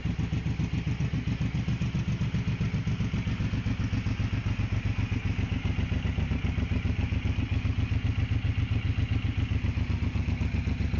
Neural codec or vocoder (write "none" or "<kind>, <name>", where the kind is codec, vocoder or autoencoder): none